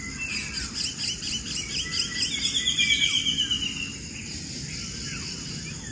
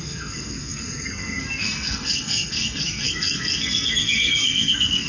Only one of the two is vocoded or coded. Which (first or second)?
second